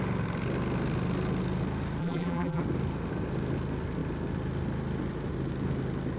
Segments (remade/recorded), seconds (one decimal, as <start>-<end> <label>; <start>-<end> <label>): 0.0-2.0 recorded; 2.0-2.6 remade; 2.6-6.2 recorded